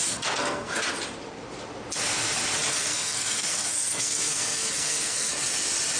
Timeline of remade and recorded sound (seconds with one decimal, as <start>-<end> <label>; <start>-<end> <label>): 0.0-0.7 remade; 0.7-2.7 recorded; 2.7-5.3 remade; 5.3-6.0 recorded